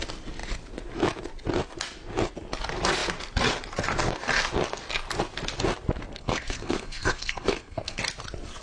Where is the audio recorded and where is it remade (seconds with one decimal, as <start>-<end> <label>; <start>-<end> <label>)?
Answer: 0.0-6.2 recorded; 6.2-8.0 remade; 8.0-8.6 recorded